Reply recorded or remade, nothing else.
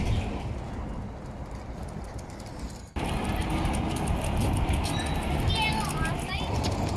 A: recorded